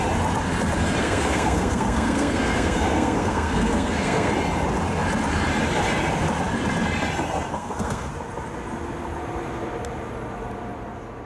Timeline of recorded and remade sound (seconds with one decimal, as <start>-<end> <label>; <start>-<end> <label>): 0.0-1.0 recorded; 1.0-4.3 remade; 4.3-7.5 recorded; 7.5-8.1 remade; 8.1-11.3 recorded